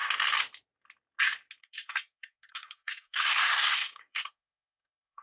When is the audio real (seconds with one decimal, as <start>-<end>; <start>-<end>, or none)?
0.0-1.6